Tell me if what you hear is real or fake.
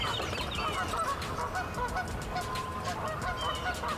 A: real